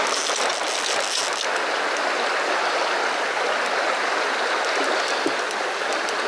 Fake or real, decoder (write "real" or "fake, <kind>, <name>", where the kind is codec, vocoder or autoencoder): real